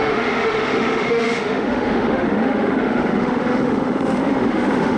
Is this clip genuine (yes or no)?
no